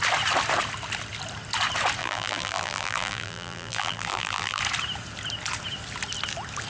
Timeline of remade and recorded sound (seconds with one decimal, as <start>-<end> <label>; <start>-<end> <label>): 0.0-2.0 recorded; 2.0-4.6 remade; 4.6-6.7 recorded